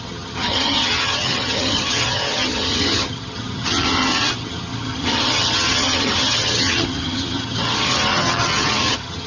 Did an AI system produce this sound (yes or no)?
yes